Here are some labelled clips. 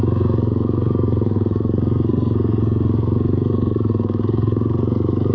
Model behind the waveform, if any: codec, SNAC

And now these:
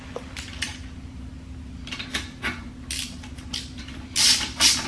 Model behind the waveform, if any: none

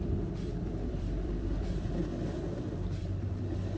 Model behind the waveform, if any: vocoder, BigVGAN v2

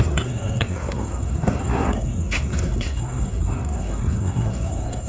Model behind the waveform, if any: codec, SNAC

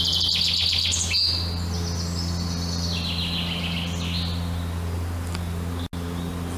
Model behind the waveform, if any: none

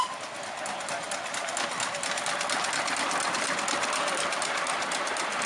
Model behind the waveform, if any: none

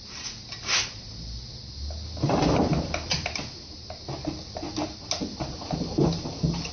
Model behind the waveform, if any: none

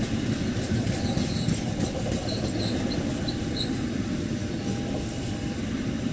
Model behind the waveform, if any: none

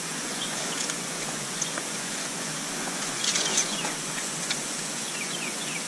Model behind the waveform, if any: vocoder, Vocos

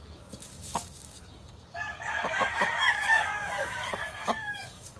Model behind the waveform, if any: codec, DAC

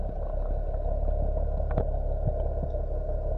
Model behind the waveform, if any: none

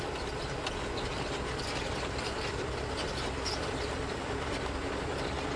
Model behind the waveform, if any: vocoder, BigVGAN v2